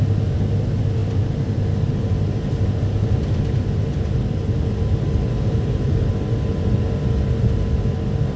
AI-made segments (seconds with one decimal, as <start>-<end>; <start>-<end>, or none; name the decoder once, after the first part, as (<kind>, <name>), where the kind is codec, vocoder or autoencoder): none